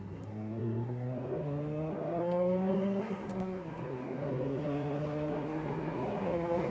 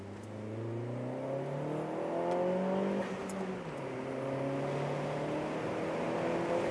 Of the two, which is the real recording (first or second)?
second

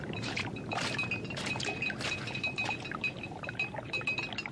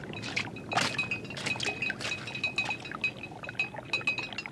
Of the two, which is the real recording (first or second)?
second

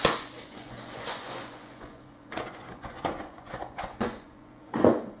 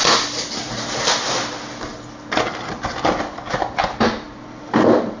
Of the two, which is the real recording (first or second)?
second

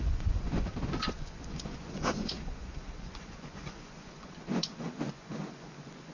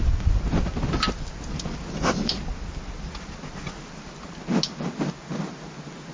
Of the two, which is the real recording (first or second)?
second